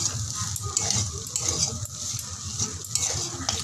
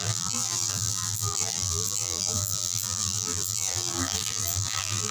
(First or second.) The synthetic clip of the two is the second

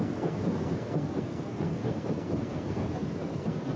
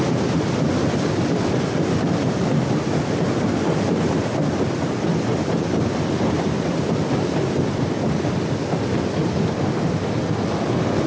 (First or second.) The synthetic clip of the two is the first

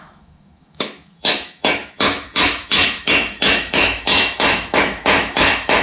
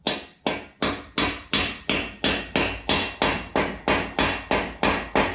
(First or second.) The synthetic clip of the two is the first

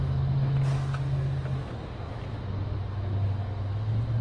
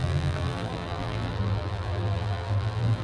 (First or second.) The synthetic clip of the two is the second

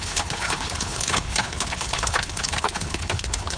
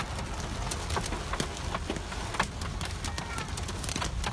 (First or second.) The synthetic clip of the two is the first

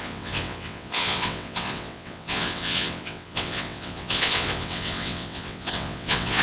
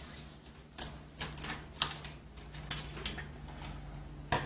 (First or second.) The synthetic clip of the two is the first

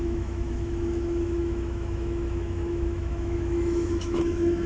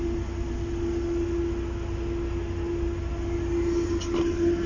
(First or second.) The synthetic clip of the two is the first